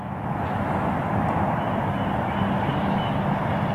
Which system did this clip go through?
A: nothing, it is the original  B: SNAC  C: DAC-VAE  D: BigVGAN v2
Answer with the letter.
A